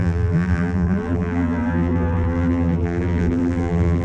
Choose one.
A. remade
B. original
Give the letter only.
A